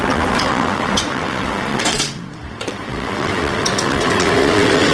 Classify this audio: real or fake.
fake